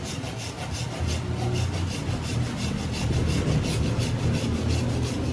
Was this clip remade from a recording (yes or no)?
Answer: no